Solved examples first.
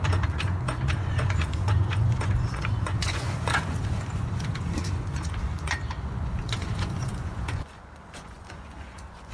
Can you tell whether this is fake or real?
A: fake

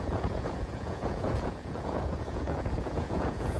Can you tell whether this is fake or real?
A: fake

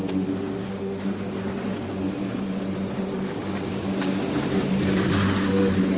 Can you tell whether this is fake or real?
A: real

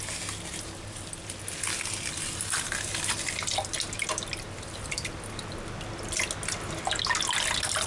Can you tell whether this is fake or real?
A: real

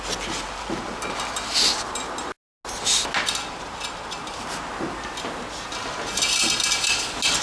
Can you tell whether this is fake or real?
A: real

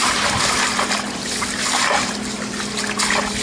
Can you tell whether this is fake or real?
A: real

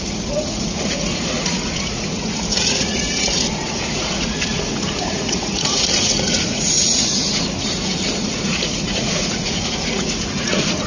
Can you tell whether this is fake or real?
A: fake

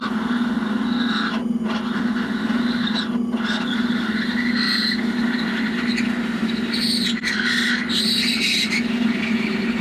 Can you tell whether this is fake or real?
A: real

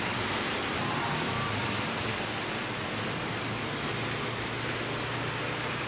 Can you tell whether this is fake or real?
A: real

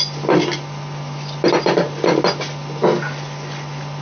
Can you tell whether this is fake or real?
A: real